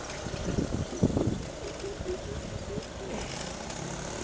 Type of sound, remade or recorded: recorded